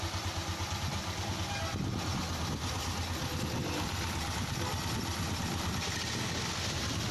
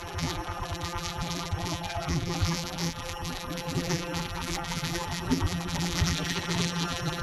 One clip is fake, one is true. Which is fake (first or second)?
second